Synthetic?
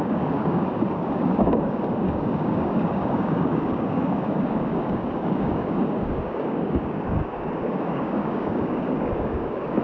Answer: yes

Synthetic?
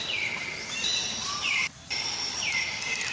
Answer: yes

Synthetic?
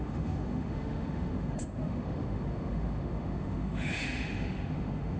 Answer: yes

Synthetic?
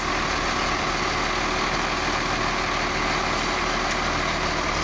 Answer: no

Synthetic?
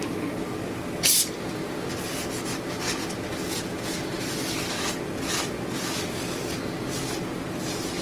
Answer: no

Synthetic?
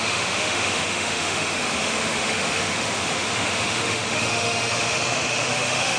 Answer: yes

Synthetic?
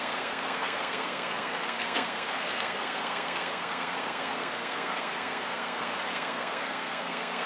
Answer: yes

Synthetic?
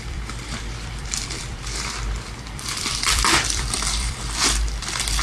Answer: yes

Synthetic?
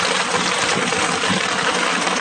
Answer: no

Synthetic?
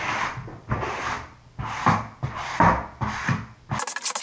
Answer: no